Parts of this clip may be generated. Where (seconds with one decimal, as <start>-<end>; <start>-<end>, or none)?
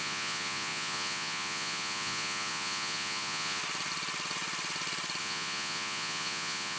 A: 0.0-3.6; 5.2-6.8